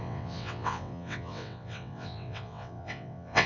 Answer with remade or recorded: remade